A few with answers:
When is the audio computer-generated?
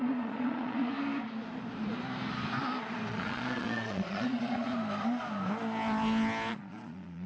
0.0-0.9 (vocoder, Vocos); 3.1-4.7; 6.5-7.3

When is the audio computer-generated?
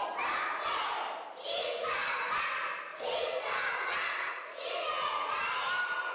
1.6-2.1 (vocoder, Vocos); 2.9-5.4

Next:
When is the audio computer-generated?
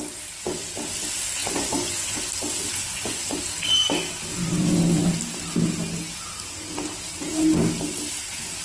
1.4-2.2 (vocoder, Vocos); 2.8-3.4